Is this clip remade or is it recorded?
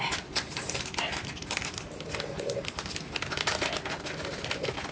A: recorded